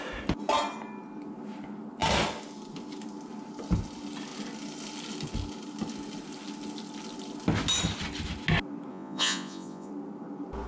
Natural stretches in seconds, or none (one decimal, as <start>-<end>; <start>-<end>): 0.0-8.9; 9.9-10.7